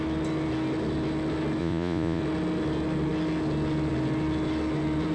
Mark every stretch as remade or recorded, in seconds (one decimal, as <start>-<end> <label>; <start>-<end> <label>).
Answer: 0.0-1.6 recorded; 1.6-2.2 remade; 2.2-5.1 recorded